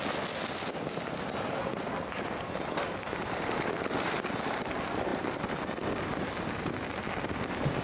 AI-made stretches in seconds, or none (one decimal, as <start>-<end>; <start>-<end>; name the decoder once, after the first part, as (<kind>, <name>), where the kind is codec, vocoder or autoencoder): none